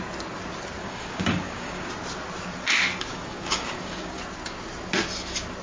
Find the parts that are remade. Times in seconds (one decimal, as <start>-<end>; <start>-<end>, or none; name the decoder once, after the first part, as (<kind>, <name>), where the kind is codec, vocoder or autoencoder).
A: 0.8-1.9 (codec, DAC); 3.1-4.2